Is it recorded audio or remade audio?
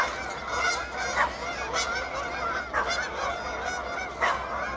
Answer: recorded